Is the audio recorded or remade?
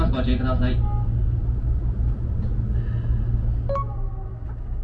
recorded